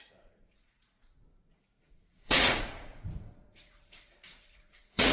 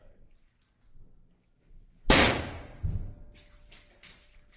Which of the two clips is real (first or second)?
second